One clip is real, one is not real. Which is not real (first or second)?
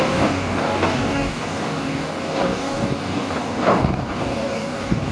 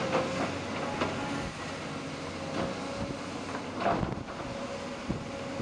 first